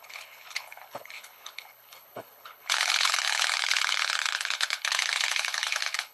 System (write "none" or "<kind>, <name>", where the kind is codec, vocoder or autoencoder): codec, HILCodec